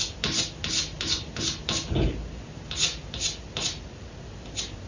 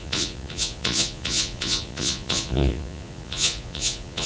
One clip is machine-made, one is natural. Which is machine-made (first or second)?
second